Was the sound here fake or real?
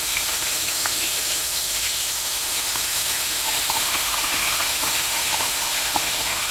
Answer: fake